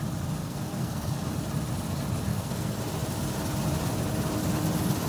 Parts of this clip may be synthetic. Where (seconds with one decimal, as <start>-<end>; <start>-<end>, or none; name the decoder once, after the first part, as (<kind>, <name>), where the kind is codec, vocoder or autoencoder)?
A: 0.4-1.2 (codec, SNAC); 2.3-2.8